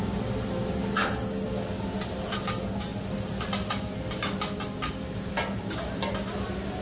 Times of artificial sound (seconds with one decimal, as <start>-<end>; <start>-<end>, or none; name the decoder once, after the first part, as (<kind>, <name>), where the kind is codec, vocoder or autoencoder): none

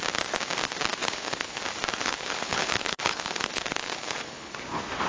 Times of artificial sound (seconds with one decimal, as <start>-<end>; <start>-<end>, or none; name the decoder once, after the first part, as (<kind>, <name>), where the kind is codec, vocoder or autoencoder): 1.0-1.6 (codec, HILCodec); 2.0-4.5

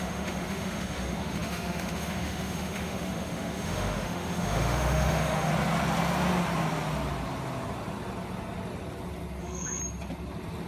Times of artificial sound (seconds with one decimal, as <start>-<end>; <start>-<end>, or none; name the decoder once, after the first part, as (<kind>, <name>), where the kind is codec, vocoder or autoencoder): 0.0-5.5 (autoencoder, DAC-VAE); 9.4-9.8

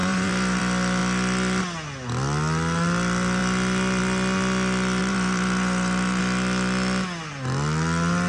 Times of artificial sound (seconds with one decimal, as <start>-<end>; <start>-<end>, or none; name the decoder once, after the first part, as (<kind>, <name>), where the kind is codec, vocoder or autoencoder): 0.0-0.6 (vocoder, BigVGAN v2); 5.0-6.2

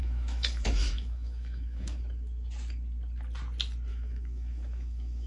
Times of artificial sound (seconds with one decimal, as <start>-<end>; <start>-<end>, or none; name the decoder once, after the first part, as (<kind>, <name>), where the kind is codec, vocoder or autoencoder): 0.0-2.0 (autoencoder, DAC-VAE); 3.9-5.3

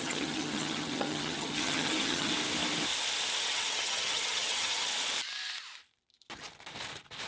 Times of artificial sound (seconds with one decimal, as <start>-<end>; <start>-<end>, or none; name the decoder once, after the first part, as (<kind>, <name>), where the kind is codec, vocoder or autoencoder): 0.0-2.3 (vocoder, HiFi-GAN); 3.4-4.9

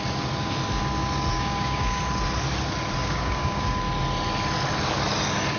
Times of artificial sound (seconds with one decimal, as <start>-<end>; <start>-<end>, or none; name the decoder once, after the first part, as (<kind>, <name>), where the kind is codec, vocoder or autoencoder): 1.3-2.0 (codec, DAC); 3.0-3.8